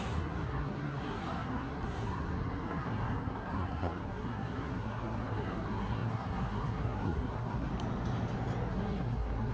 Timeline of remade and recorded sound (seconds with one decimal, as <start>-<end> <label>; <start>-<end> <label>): 0.0-7.7 remade; 7.7-8.7 recorded; 8.7-9.5 remade